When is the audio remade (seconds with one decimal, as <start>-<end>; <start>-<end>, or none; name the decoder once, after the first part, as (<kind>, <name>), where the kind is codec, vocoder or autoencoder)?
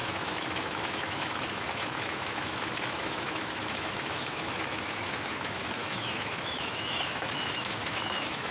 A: 0.0-8.5 (autoencoder, DAC-VAE)